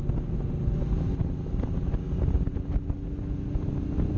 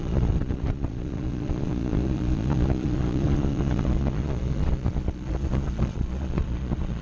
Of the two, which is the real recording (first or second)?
first